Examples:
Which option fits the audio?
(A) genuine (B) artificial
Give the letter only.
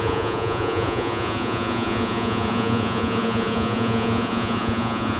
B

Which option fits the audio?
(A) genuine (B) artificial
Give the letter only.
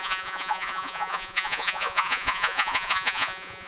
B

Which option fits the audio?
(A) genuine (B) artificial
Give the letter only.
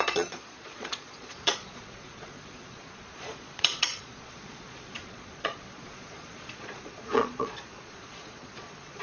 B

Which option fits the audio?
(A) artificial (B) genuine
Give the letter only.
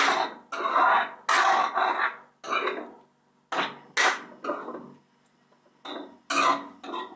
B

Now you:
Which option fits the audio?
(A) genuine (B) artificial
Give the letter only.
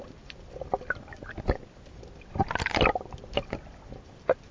A